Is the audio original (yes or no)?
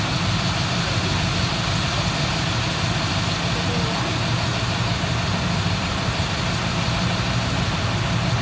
yes